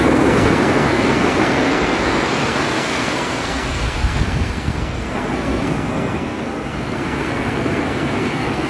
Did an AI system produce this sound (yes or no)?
yes